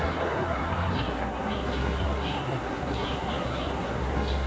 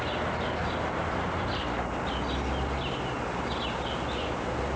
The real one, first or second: second